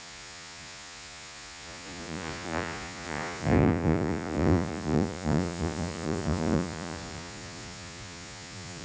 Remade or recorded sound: remade